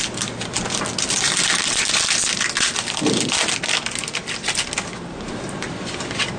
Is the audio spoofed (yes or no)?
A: no